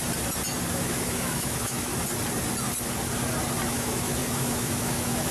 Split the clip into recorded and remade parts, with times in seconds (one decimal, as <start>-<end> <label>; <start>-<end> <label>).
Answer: 0.0-0.7 recorded; 0.7-1.9 remade; 1.9-3.7 recorded; 3.7-5.3 remade